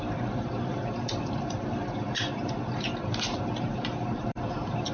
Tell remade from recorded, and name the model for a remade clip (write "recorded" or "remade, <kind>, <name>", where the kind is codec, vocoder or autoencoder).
remade, vocoder, BigVGAN v2